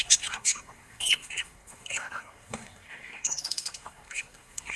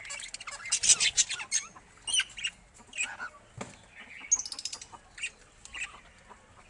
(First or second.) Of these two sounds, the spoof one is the first